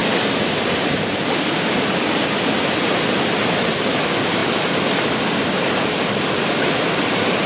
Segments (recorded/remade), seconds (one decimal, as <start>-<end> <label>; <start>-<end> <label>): 0.0-7.5 recorded